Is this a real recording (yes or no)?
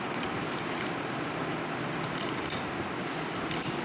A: yes